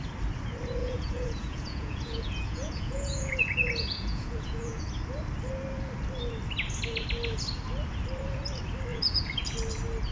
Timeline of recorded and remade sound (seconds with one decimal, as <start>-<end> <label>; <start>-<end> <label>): 0.0-0.8 recorded; 0.8-4.8 remade; 4.8-8.9 recorded; 8.9-9.4 remade; 9.4-10.1 recorded